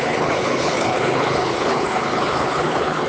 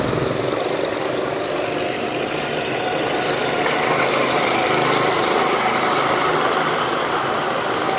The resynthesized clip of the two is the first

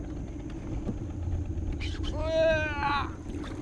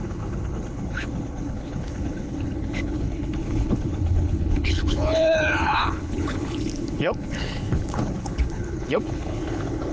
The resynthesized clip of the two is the second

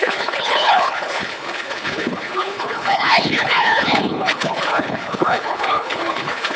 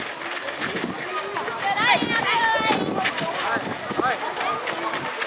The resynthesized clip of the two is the first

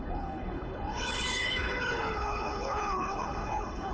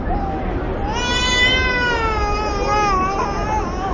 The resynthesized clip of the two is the first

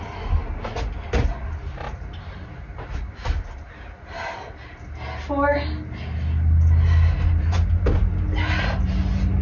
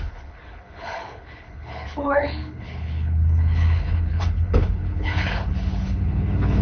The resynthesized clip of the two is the second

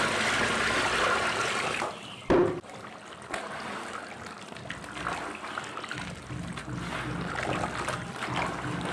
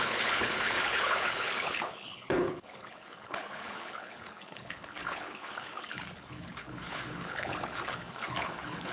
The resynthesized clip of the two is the second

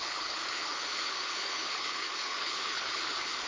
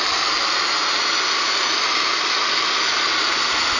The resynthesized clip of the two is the first